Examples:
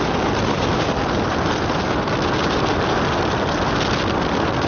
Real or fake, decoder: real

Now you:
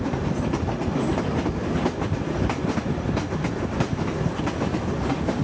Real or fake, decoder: real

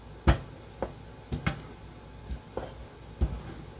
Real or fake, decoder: real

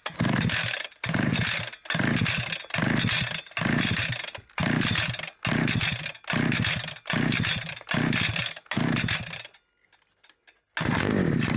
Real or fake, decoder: real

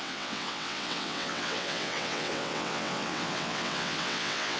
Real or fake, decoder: fake, vocoder, WaveNeXt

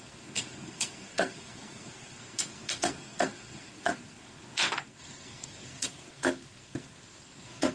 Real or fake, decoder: fake, codec, SNAC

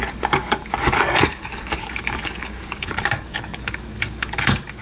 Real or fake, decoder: fake, codec, DAC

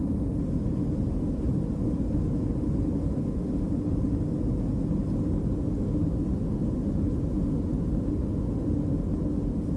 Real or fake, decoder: real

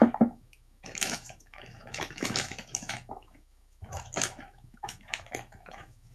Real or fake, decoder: fake, autoencoder, DAC-VAE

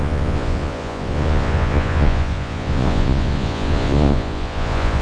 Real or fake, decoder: fake, vocoder, Vocos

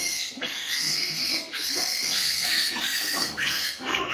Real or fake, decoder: fake, codec, SNAC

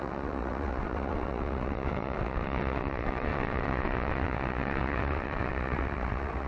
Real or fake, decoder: fake, vocoder, WaveNeXt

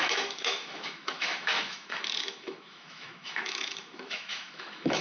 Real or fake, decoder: fake, autoencoder, DAC-VAE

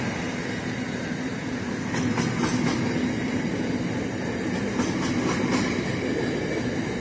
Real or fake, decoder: real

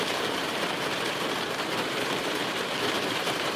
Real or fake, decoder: fake, vocoder, BigVGAN v2